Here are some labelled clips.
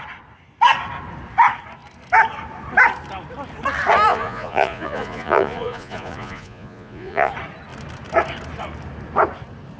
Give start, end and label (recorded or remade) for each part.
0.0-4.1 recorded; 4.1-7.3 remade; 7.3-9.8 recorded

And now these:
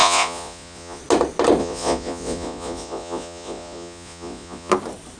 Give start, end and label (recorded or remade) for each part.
0.0-1.0 remade; 1.0-1.6 recorded; 1.6-4.7 remade; 4.7-5.2 recorded

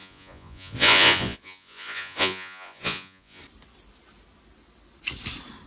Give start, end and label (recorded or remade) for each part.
0.0-3.4 remade; 3.4-5.7 recorded

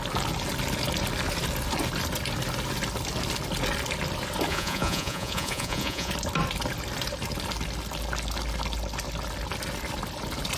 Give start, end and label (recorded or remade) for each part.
0.0-4.5 recorded; 4.5-6.1 remade; 6.1-10.6 recorded

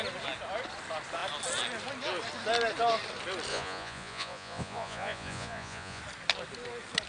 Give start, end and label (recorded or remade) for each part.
0.0-3.5 recorded; 3.5-6.0 remade; 6.0-7.1 recorded